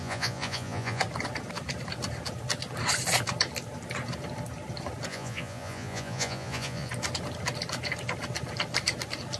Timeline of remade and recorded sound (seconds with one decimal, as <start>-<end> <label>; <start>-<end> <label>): 0.0-1.0 remade; 1.0-5.1 recorded; 5.1-6.9 remade; 6.9-9.4 recorded